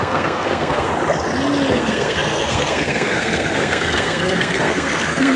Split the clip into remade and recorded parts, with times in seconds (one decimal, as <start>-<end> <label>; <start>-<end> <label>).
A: 0.0-0.9 remade; 0.9-1.7 recorded; 1.7-5.4 remade